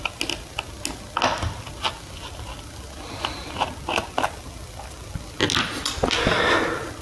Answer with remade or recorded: recorded